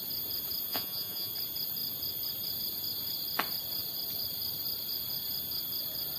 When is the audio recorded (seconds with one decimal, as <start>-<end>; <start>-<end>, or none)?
0.0-0.7; 1.3-6.2